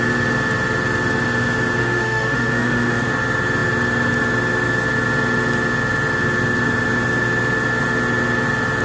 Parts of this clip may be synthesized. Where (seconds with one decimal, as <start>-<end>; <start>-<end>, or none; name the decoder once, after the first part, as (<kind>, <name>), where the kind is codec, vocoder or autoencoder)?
1.8-3.1 (autoencoder, DAC-VAE)